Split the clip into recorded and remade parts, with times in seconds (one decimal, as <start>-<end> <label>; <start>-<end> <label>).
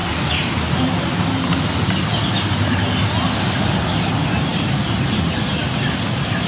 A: 0.0-6.5 recorded